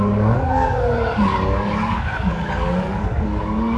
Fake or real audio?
fake